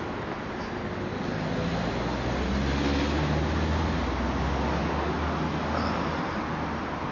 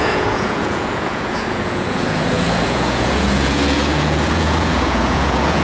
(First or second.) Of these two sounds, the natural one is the first